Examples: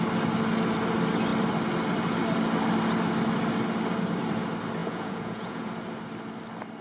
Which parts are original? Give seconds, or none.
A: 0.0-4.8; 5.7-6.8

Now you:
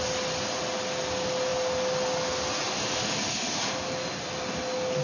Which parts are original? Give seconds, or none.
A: 0.0-5.0

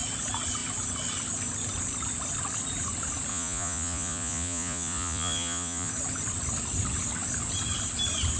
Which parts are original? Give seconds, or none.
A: 0.0-3.3; 5.9-8.4

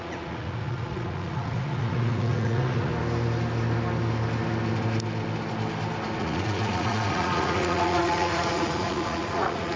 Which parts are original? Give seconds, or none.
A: 2.9-6.2

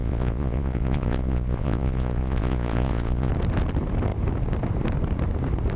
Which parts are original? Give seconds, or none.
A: 3.3-5.8

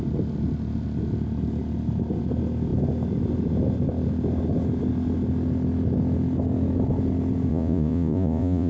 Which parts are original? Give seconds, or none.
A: 0.0-7.5